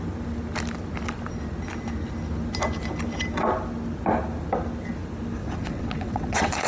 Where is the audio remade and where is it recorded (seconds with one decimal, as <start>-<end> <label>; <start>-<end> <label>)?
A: 0.0-5.4 recorded; 5.4-6.7 remade